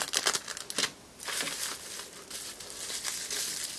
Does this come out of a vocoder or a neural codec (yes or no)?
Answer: no